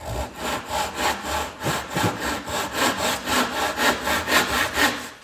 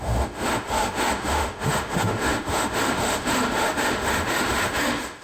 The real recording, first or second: first